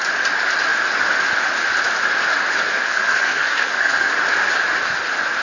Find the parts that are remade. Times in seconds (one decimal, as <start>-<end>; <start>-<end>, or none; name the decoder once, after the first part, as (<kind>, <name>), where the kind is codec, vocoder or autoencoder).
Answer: 2.6-4.1 (codec, SNAC)